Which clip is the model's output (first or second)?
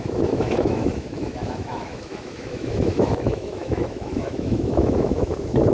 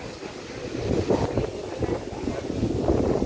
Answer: first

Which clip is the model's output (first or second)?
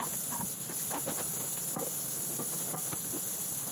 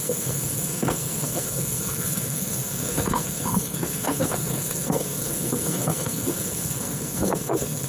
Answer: second